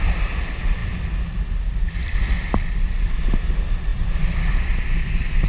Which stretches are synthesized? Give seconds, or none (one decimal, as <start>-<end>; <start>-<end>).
2.0-3.4; 3.9-4.4